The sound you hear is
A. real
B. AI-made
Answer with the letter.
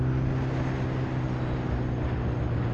A